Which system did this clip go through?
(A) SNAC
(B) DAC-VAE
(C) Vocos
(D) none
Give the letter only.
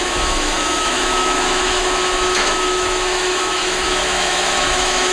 B